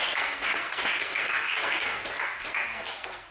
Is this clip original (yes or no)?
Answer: no